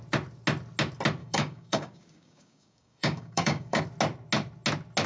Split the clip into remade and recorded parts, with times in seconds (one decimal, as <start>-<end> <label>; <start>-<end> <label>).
0.0-1.2 recorded; 1.2-3.8 remade; 3.8-5.1 recorded